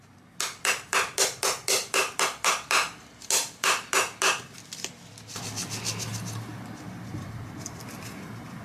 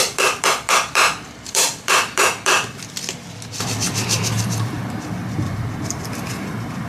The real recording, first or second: first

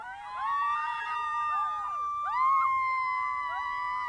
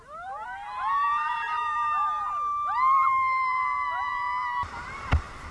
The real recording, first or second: first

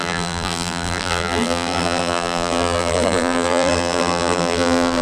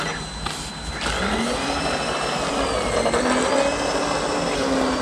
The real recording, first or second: second